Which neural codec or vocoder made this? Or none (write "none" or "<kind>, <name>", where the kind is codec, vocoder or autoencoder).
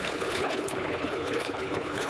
codec, HILCodec